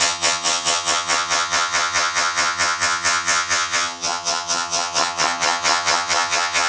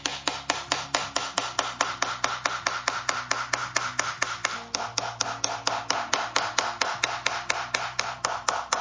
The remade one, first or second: first